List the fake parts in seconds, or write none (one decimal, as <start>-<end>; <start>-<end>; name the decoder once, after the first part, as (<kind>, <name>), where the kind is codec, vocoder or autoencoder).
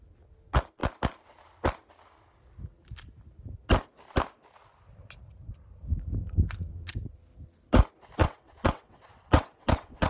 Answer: 8.2-10.1 (vocoder, WaveNeXt)